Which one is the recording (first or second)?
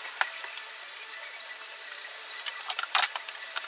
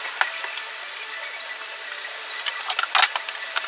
second